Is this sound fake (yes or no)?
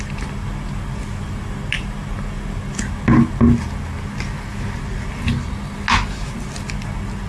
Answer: no